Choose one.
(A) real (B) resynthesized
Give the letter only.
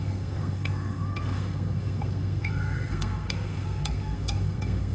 B